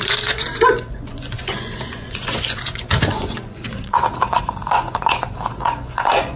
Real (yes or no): no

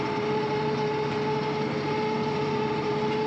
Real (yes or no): yes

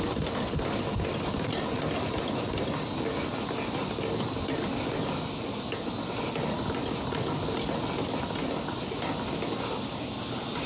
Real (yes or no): yes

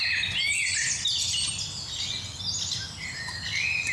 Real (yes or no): yes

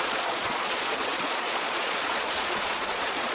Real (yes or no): no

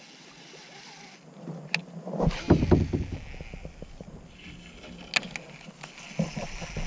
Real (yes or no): yes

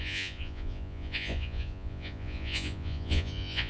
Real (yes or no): no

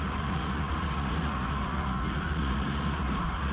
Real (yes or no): no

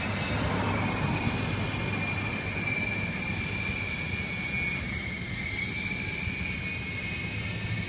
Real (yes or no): yes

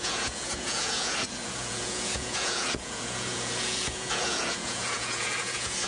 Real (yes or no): no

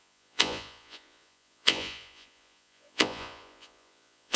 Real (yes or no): no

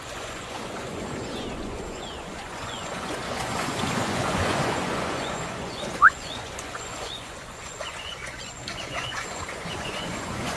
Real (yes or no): no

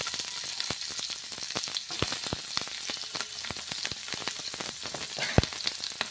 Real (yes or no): yes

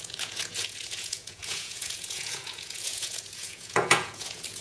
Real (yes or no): no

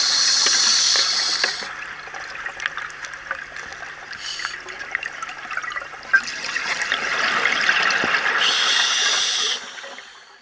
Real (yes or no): yes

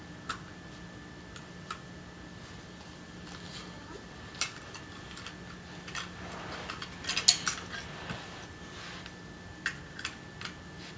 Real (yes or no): yes